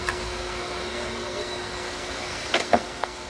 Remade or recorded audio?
remade